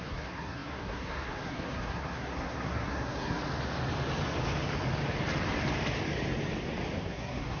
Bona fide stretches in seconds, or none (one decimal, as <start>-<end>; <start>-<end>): 3.4-7.0